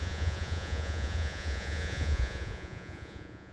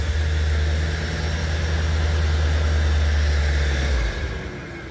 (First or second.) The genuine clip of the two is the second